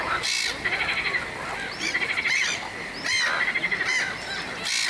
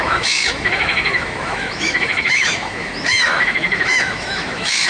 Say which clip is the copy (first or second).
second